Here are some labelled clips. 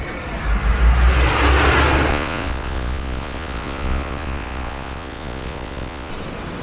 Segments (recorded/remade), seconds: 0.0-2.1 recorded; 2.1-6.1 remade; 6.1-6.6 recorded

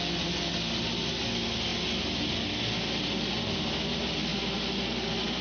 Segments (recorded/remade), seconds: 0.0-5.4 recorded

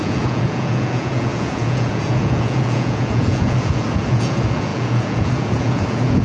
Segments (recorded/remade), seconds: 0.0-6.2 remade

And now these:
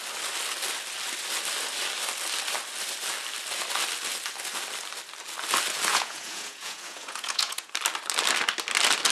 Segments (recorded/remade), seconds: 0.0-5.9 recorded; 5.9-7.7 remade; 7.7-9.1 recorded

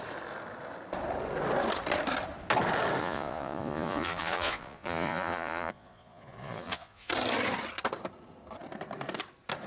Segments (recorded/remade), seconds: 0.0-3.0 recorded; 3.0-7.1 remade; 7.1-9.7 recorded

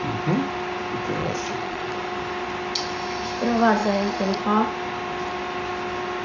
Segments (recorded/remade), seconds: 0.0-1.2 recorded; 1.2-1.9 remade; 1.9-3.8 recorded; 3.8-4.4 remade; 4.4-6.2 recorded